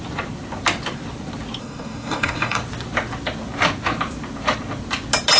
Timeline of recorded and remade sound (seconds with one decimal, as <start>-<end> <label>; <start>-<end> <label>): 0.0-1.6 recorded; 1.6-2.6 remade; 2.6-5.4 recorded